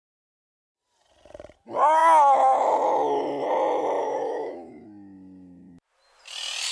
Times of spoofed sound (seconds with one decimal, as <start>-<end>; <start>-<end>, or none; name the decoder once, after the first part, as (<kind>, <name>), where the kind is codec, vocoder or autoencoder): 4.0-4.7 (autoencoder, DAC-VAE)